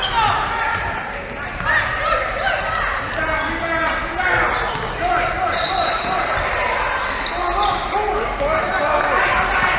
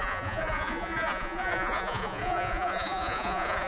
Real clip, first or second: first